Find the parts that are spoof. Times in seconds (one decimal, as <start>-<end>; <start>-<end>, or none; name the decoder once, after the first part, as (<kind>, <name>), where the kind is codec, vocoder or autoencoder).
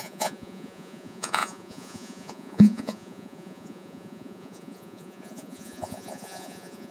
0.0-6.9 (vocoder, Vocos)